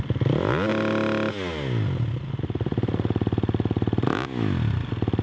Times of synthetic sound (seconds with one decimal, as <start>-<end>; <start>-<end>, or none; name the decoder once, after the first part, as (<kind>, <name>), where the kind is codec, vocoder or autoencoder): none

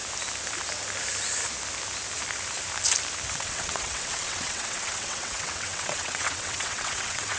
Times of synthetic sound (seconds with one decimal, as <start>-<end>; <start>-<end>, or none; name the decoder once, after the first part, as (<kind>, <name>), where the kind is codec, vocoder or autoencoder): 3.3-7.4 (vocoder, WaveNeXt)